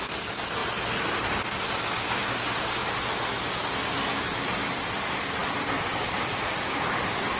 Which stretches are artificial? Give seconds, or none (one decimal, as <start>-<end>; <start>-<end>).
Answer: none